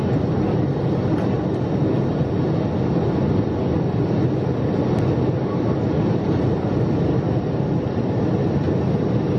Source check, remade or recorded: recorded